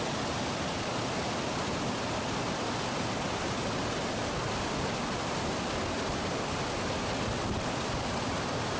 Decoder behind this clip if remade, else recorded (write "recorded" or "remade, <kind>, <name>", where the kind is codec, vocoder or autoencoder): recorded